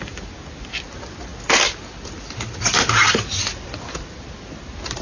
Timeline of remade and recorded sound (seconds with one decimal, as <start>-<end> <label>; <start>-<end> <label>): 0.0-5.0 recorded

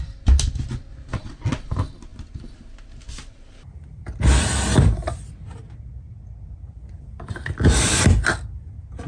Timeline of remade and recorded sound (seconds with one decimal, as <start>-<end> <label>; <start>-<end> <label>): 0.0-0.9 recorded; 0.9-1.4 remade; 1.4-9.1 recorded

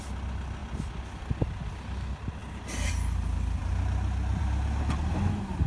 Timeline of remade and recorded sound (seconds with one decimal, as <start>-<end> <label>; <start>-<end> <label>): 0.0-5.7 recorded

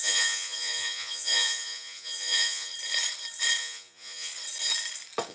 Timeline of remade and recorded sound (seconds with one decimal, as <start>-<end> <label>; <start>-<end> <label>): 0.0-2.7 remade; 2.7-3.6 recorded; 3.6-4.3 remade; 4.3-5.3 recorded

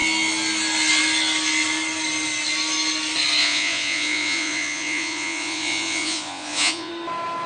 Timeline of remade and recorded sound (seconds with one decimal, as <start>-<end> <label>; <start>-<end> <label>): 0.0-3.4 recorded; 3.4-6.9 remade; 6.9-7.5 recorded

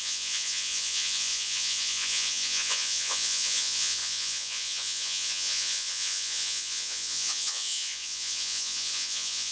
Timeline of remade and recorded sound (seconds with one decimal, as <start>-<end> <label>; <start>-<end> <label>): 0.0-9.5 remade

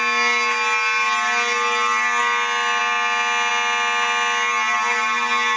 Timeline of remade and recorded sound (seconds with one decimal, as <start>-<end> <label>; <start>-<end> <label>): 0.0-5.6 recorded

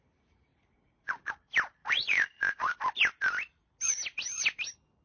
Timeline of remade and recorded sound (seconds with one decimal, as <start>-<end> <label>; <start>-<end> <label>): 0.0-0.5 recorded; 0.5-1.3 remade; 1.3-1.8 recorded; 1.8-2.7 remade; 2.7-5.0 recorded